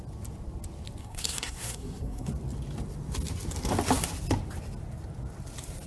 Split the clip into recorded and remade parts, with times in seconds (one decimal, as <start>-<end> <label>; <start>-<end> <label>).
0.0-1.0 recorded; 1.0-2.3 remade; 2.3-5.9 recorded